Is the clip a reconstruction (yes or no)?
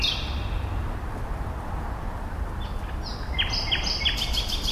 no